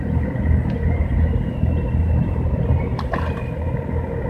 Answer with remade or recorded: recorded